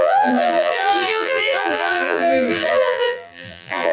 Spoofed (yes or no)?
yes